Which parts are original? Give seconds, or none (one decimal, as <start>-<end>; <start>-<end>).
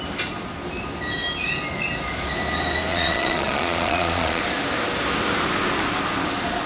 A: 0.0-2.9; 4.4-6.7